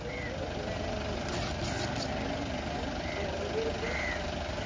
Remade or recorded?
recorded